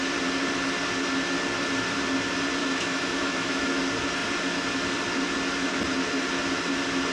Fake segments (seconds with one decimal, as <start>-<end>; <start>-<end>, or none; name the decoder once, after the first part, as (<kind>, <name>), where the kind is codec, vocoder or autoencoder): 2.6-3.8 (autoencoder, DAC-VAE)